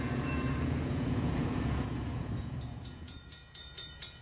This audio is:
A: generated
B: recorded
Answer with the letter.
A